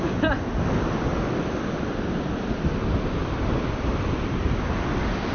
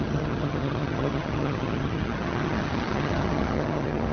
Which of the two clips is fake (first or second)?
second